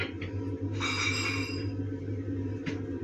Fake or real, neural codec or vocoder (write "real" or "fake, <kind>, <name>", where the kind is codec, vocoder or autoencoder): real